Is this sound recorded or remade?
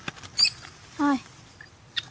recorded